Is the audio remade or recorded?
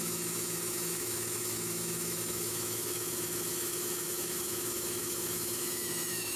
remade